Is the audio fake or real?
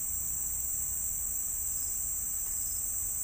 real